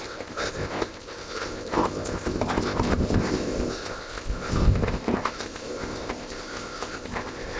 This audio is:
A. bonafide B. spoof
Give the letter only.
B